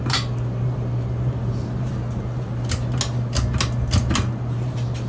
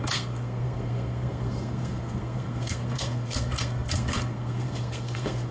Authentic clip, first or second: first